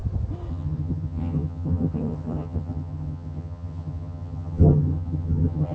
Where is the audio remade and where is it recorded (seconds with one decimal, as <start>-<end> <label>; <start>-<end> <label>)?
0.0-0.5 recorded; 0.5-5.7 remade